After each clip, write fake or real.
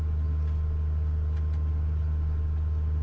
real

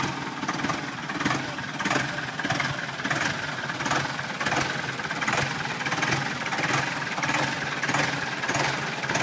real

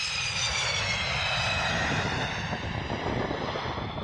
real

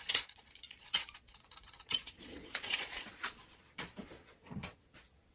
fake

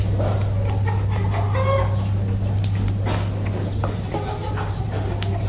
real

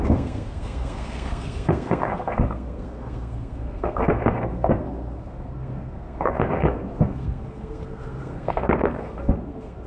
fake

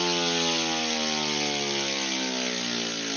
real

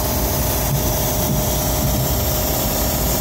real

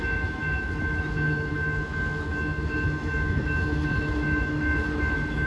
fake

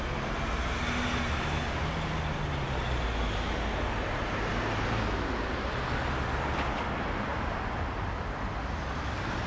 real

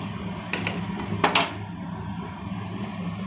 real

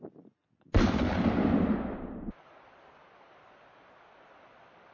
real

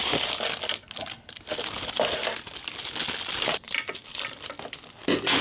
real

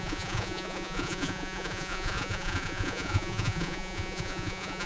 fake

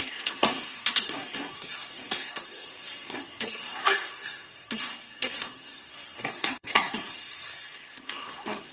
fake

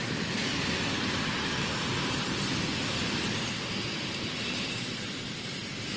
real